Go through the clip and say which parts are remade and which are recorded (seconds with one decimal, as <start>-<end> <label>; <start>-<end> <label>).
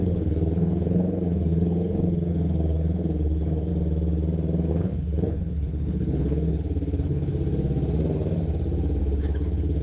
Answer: 0.0-3.7 remade; 3.7-4.7 recorded; 4.7-7.3 remade; 7.3-9.0 recorded; 9.0-9.8 remade